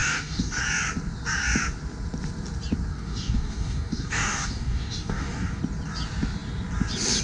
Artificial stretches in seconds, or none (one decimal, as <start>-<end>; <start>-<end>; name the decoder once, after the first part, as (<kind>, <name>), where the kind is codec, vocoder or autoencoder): 0.0-0.6 (codec, DAC); 2.9-5.6